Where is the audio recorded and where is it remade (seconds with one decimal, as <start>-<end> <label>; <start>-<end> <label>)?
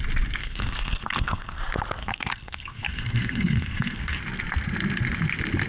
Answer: 0.0-0.4 recorded; 0.4-1.6 remade; 1.6-2.0 recorded; 2.0-4.2 remade; 4.2-5.7 recorded